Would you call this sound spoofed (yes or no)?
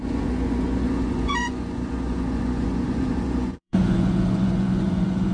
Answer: yes